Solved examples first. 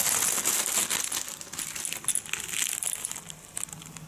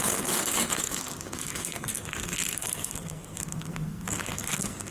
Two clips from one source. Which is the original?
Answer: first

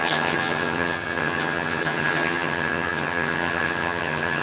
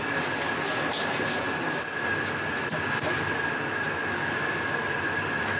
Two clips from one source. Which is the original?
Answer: second